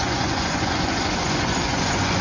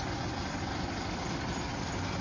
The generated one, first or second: first